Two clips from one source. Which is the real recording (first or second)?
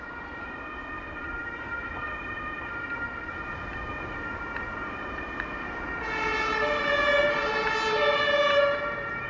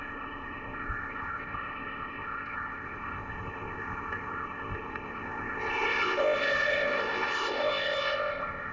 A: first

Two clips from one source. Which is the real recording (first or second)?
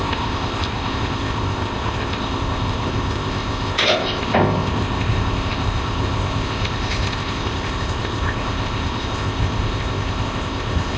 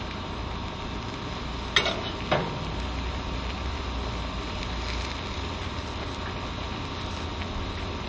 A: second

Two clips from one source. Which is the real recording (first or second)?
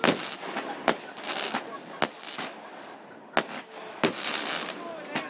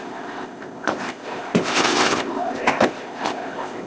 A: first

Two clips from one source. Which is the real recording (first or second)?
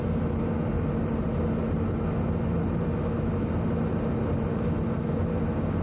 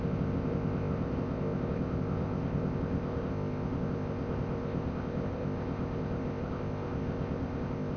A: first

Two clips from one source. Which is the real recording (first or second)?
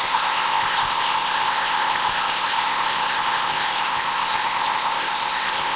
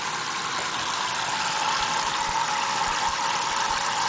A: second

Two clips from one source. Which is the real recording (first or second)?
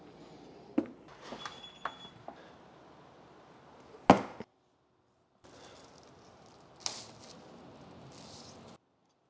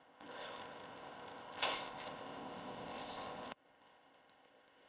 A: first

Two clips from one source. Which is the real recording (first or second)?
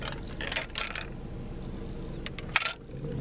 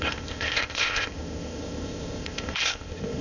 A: first